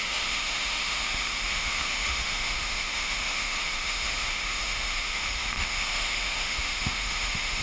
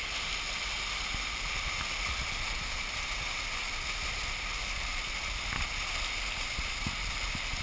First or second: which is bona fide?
second